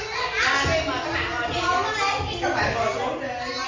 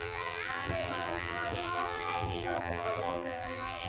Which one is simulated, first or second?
second